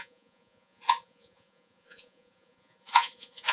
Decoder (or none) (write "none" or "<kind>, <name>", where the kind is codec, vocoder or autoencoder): vocoder, Vocos